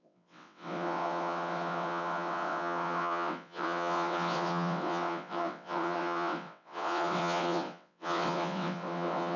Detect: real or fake fake